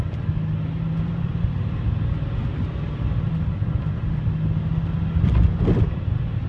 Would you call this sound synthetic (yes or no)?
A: no